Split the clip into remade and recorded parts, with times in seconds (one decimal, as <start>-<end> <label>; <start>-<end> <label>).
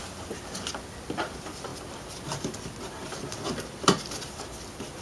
0.0-1.0 recorded; 1.0-1.7 remade; 1.7-2.6 recorded; 2.6-3.0 remade; 3.0-3.8 recorded; 3.8-5.0 remade